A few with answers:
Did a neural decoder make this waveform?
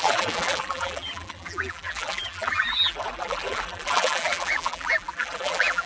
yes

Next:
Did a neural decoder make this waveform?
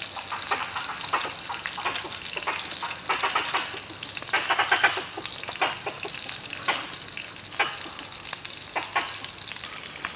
no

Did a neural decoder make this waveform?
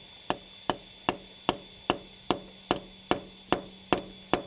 no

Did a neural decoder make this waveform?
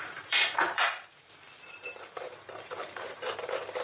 yes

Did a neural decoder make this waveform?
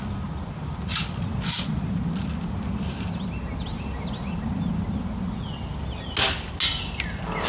no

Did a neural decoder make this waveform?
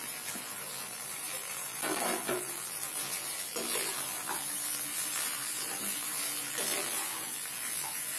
yes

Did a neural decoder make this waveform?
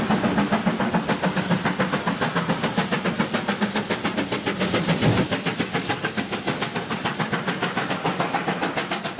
no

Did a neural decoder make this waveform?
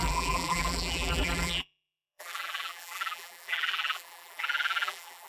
yes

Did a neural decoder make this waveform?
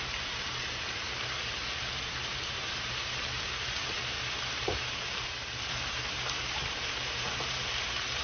yes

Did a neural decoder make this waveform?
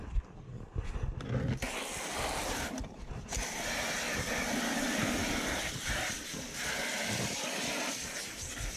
no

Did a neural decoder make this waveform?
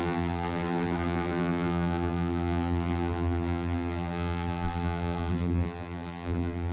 yes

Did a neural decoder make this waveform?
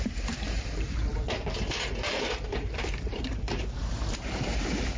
yes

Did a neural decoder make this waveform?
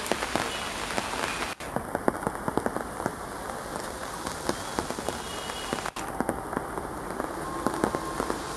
no